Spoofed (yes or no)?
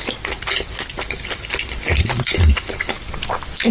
no